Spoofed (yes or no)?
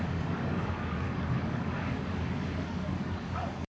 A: yes